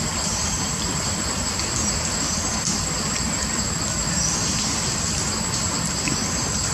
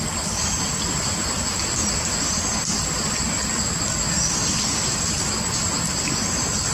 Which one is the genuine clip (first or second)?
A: second